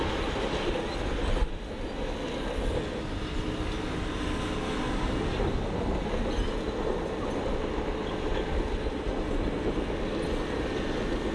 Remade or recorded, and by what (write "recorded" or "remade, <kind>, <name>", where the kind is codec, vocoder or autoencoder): recorded